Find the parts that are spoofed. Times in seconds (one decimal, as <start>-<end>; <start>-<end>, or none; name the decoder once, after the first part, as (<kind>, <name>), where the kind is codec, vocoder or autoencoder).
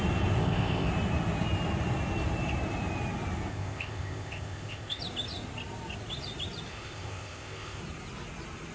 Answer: 0.4-0.9 (codec, ZipCodec); 3.5-5.0; 6.7-7.8